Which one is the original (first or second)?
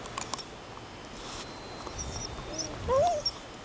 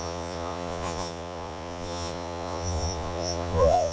first